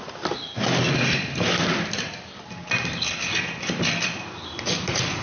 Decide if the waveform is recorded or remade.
recorded